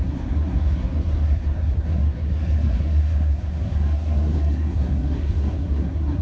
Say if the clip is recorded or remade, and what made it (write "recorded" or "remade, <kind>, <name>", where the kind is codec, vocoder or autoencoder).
remade, codec, SNAC